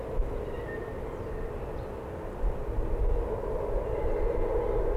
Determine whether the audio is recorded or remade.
recorded